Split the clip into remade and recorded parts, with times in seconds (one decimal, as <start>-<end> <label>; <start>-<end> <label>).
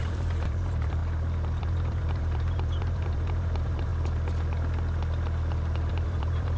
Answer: 0.0-1.0 remade; 1.0-1.6 recorded; 1.6-3.9 remade; 3.9-5.9 recorded; 5.9-6.6 remade